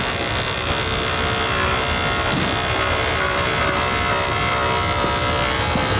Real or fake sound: real